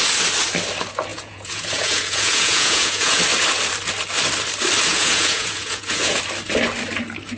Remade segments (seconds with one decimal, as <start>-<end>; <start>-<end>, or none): 1.1-3.2; 4.9-6.2